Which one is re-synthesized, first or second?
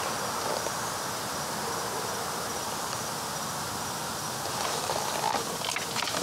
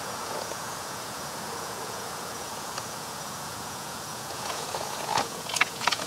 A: second